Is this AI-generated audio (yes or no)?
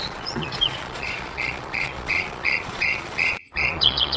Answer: yes